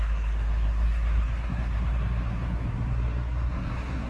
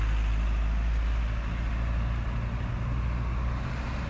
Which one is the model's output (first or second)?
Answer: first